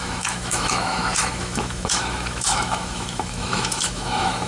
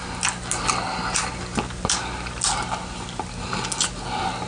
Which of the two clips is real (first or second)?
second